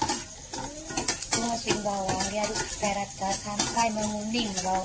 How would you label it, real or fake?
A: real